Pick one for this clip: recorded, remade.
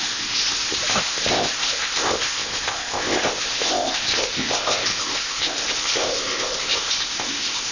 remade